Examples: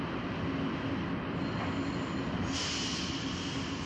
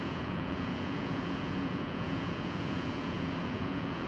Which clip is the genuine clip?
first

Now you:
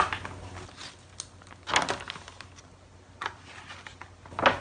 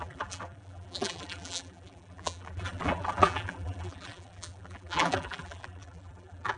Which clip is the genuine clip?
first